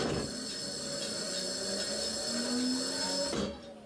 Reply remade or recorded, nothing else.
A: recorded